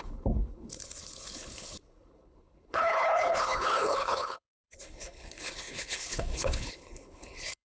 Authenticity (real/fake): fake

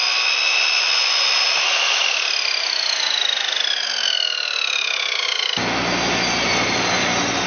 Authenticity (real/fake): real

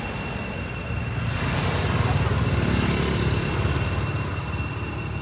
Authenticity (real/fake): real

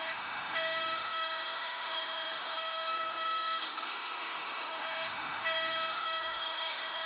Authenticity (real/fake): fake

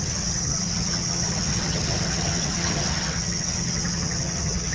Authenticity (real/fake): fake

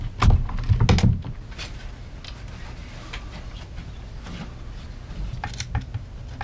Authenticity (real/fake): real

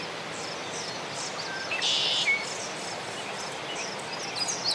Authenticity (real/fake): real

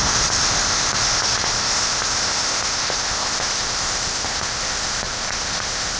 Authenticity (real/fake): fake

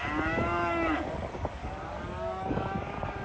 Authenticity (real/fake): fake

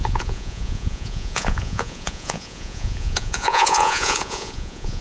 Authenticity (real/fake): fake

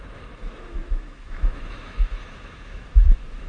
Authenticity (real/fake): fake